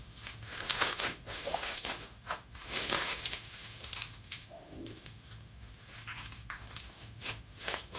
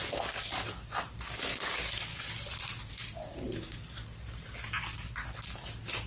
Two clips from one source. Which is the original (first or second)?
second